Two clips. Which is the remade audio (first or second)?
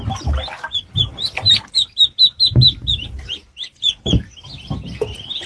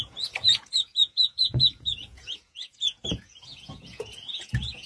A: second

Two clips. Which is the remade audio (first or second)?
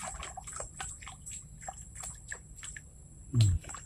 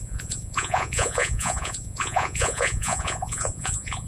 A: second